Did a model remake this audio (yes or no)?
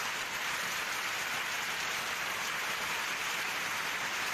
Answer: no